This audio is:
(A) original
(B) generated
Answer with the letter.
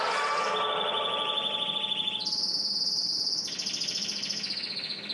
A